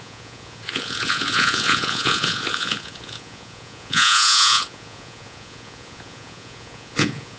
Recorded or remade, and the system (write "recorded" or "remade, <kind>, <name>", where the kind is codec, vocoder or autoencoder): remade, vocoder, Vocos